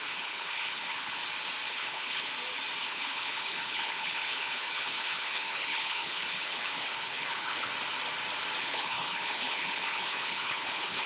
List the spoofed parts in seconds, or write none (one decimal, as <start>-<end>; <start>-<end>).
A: 0.0-1.2; 1.7-2.3; 2.8-7.7; 8.6-11.1